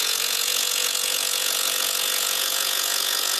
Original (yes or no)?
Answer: no